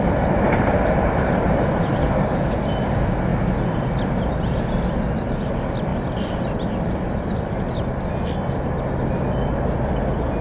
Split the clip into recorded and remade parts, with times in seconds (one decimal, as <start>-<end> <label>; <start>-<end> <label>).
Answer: 0.0-10.4 recorded